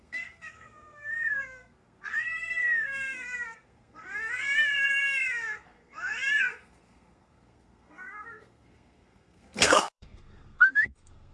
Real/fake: fake